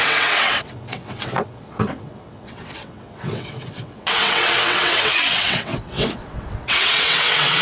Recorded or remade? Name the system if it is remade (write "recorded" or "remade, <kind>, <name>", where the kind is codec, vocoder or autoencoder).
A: remade, vocoder, WaveNeXt